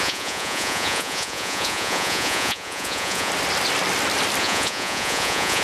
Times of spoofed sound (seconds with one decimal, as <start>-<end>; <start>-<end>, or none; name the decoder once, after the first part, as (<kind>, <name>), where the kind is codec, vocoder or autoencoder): 0.0-3.3 (vocoder, Vocos); 4.4-5.6